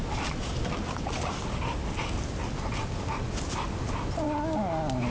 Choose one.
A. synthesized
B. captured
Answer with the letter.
B